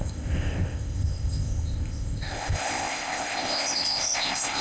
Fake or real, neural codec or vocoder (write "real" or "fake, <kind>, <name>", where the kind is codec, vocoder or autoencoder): fake, codec, ZipCodec